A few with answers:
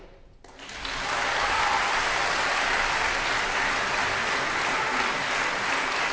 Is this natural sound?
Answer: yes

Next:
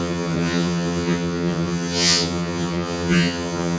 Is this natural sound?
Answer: no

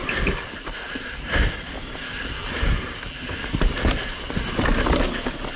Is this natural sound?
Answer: yes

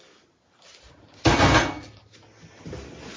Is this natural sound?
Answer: yes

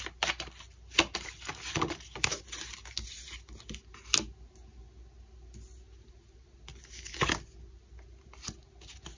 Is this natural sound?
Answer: yes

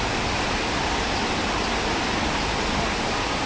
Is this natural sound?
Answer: yes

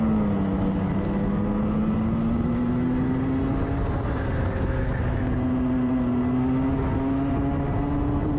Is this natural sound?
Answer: yes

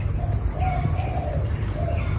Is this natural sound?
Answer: yes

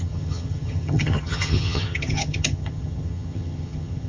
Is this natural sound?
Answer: no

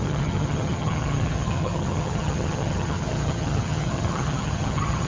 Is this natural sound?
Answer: no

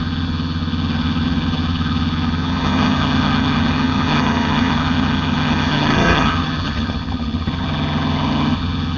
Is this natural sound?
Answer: no